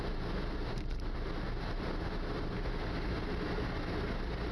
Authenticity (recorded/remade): recorded